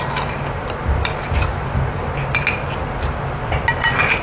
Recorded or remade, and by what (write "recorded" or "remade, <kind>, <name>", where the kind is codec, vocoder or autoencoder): recorded